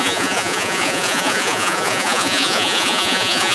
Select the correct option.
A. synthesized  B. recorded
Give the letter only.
A